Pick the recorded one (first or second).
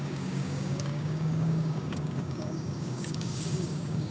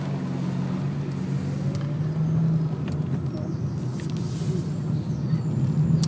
second